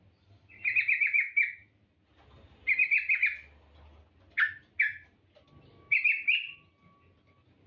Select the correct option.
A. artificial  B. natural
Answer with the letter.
B